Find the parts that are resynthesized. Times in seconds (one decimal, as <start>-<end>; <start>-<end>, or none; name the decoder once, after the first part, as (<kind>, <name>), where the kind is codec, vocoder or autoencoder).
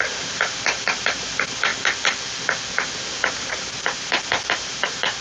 0.0-1.7 (vocoder, BigVGAN v2); 2.9-5.2